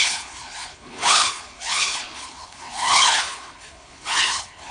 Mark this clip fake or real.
fake